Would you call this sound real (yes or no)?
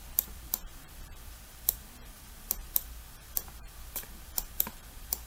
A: no